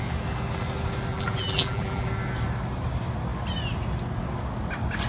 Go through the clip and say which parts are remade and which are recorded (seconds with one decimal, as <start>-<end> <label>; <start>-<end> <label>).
0.0-1.1 recorded; 1.1-2.1 remade; 2.1-5.1 recorded

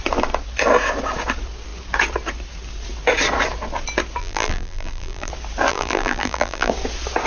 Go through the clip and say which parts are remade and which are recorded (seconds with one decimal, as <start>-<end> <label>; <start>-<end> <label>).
0.0-4.2 recorded; 4.2-5.3 remade; 5.3-5.7 recorded; 5.7-6.7 remade; 6.7-7.3 recorded